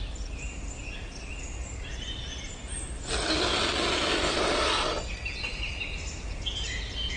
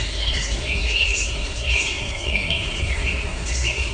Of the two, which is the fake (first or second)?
second